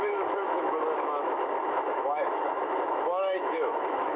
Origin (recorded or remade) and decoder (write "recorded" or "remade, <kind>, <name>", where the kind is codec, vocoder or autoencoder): remade, autoencoder, DAC-VAE